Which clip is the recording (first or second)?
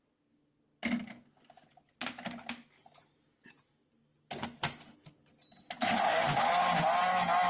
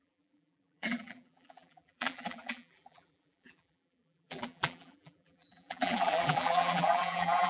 first